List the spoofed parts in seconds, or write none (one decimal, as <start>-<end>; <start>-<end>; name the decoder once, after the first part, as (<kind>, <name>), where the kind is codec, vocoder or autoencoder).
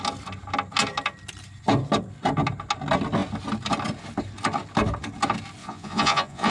5.6-6.5 (vocoder, Vocos)